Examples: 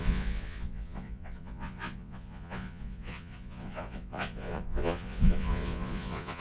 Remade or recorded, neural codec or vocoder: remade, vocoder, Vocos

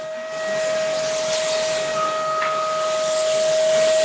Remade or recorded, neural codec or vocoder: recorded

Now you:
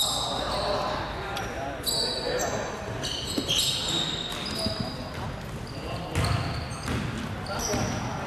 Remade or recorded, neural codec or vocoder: recorded